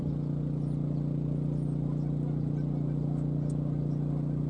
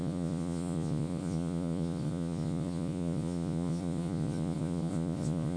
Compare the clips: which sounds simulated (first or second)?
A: second